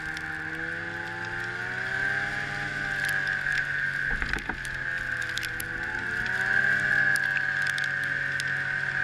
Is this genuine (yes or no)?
yes